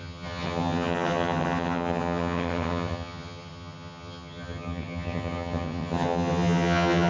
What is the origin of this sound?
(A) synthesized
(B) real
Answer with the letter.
A